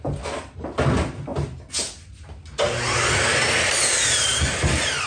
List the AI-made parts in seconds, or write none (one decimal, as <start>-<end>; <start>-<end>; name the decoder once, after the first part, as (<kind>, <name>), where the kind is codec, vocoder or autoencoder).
none